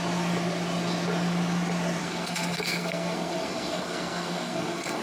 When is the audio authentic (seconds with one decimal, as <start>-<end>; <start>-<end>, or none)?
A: 0.0-2.0